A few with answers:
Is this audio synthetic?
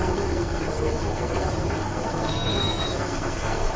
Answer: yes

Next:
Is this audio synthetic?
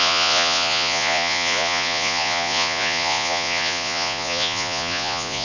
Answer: yes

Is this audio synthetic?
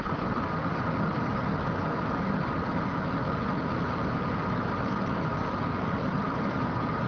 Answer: no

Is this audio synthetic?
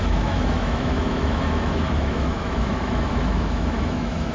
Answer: yes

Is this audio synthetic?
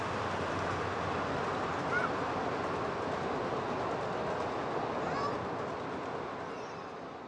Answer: no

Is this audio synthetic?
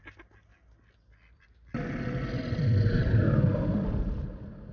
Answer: no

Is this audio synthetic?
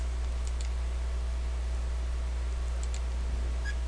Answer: no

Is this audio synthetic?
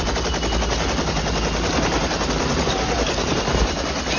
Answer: no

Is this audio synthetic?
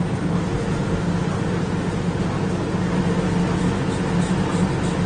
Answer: no